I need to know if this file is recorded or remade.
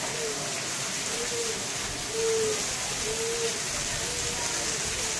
recorded